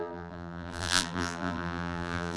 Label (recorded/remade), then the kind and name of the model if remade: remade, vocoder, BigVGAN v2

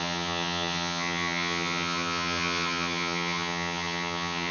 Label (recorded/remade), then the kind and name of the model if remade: remade, vocoder, HiFi-GAN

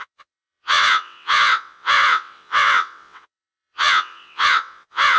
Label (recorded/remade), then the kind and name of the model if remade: remade, vocoder, WaveNeXt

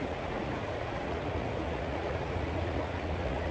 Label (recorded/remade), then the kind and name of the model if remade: remade, vocoder, Vocos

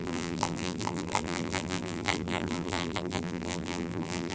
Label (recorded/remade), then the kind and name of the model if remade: remade, vocoder, BigVGAN v2